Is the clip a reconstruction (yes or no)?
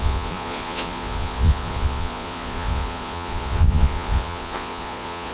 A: yes